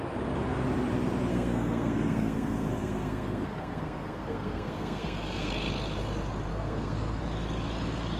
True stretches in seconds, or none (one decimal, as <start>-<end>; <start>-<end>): 0.0-1.3; 5.5-6.5; 7.2-8.2